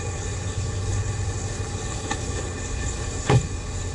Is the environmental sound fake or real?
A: fake